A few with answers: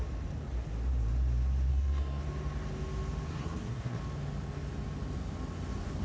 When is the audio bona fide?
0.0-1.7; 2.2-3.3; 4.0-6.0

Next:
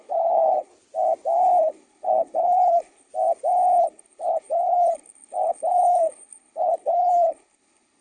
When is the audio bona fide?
0.7-1.6; 3.1-3.8

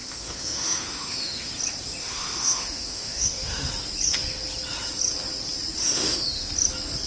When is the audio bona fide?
1.5-2.0; 3.7-5.8; 6.5-7.1

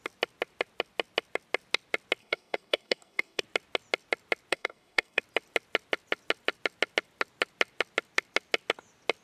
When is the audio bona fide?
0.0-2.2; 3.4-4.5; 5.2-9.2

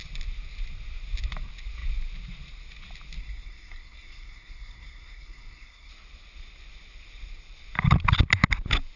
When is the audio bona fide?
0.0-3.2; 5.9-9.0

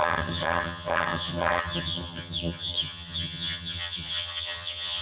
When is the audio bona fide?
none

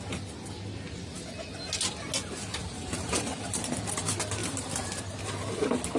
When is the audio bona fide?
0.0-2.6; 3.9-4.4; 5.2-6.0